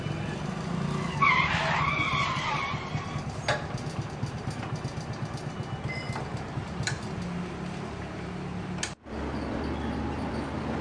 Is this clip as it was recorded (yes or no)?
yes